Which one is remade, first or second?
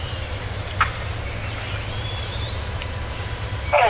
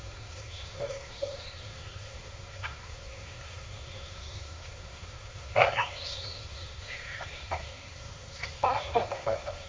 second